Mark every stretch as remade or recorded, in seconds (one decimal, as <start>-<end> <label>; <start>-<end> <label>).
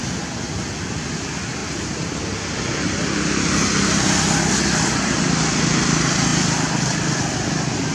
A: 0.0-7.9 recorded